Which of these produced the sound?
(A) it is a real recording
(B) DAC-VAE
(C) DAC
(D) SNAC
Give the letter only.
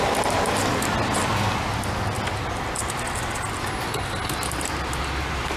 A